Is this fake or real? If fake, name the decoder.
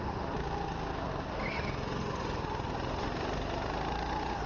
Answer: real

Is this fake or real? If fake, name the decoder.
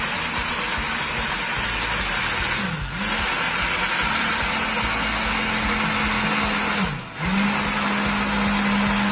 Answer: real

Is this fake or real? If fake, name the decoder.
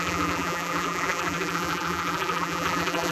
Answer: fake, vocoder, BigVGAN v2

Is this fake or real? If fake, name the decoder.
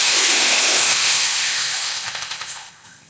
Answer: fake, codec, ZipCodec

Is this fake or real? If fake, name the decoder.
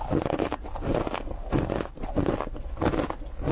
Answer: real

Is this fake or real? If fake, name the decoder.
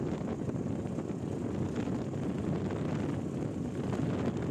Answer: real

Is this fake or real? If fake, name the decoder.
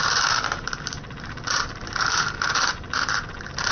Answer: fake, vocoder, BigVGAN v2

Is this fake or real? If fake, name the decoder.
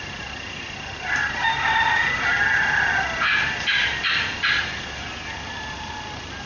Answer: real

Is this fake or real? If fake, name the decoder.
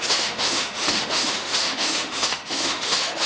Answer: fake, autoencoder, DAC-VAE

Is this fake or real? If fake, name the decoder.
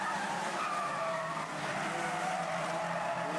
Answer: real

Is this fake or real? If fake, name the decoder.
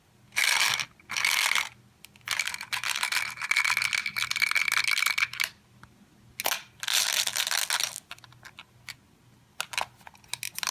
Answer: real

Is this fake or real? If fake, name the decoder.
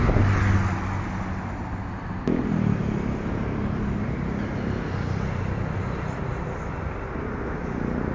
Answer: real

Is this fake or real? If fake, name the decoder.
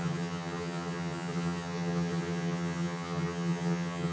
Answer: fake, vocoder, HiFi-GAN